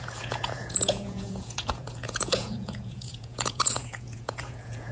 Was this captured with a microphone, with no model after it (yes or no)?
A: no